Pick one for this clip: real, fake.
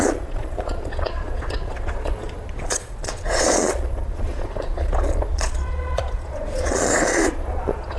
fake